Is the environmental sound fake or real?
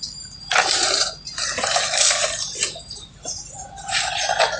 fake